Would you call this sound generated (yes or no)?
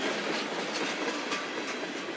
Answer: no